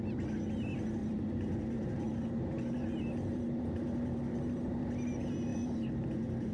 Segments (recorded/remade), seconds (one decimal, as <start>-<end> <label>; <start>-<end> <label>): 0.0-1.0 recorded; 1.0-4.9 remade; 4.9-5.5 recorded; 5.5-6.5 remade